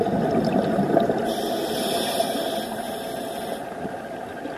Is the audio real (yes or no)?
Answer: yes